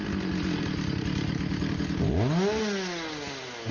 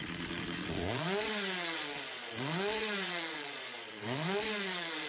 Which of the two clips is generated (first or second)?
second